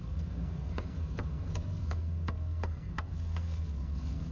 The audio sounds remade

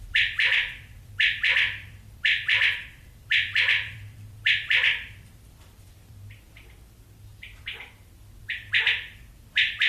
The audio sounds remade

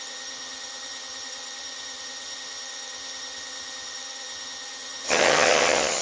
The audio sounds remade